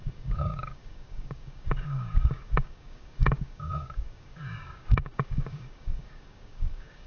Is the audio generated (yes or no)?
yes